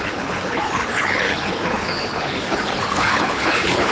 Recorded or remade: remade